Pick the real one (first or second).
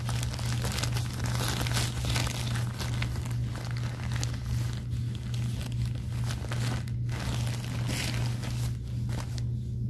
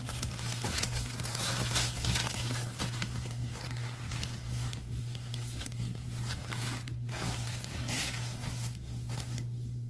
first